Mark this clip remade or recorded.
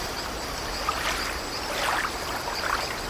recorded